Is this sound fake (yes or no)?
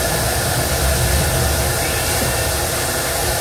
no